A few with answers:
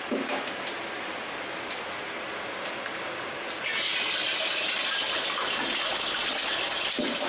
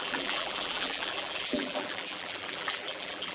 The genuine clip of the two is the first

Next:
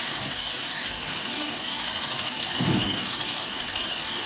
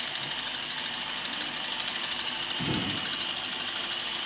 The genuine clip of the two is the second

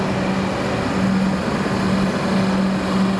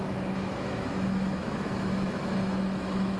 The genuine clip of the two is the first